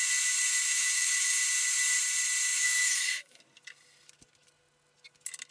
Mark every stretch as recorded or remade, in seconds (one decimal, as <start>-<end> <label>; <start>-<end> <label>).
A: 0.0-0.7 recorded; 0.7-1.4 remade; 1.4-2.5 recorded; 2.5-3.4 remade; 3.4-5.5 recorded